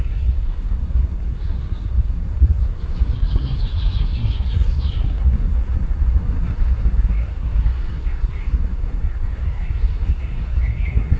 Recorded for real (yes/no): no